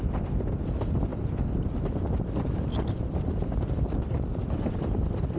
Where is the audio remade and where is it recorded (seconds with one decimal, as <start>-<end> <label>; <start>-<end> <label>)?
0.0-1.1 recorded; 1.1-4.0 remade; 4.0-5.4 recorded